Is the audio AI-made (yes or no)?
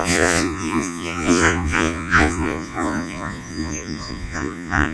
yes